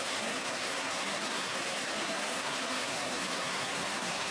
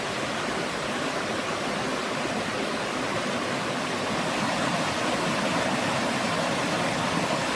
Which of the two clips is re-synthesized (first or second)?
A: first